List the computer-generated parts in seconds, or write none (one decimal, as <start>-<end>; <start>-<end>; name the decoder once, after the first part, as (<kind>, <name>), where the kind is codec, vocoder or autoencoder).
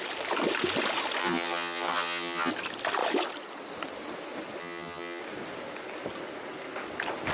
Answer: 1.2-2.5 (vocoder, HiFi-GAN); 4.6-5.2